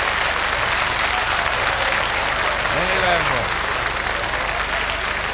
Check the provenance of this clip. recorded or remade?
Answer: recorded